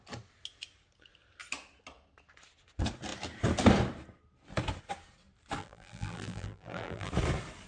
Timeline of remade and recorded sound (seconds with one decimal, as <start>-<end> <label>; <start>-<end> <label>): 0.0-5.6 recorded; 5.6-7.1 remade; 7.1-7.7 recorded